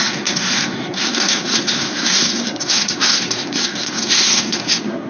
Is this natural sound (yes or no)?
no